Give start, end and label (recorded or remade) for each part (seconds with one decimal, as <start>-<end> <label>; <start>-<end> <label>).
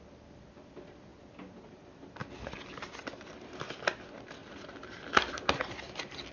0.0-4.4 recorded; 4.4-5.4 remade; 5.4-6.3 recorded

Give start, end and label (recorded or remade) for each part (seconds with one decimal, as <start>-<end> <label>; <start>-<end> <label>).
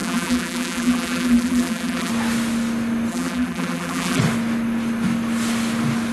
0.0-2.1 remade; 2.1-3.1 recorded; 3.1-4.2 remade; 4.2-6.1 recorded